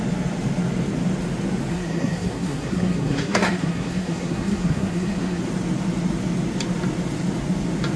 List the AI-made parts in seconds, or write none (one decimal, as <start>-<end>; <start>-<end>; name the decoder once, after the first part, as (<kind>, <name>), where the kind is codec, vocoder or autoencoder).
1.7-5.4 (codec, SNAC)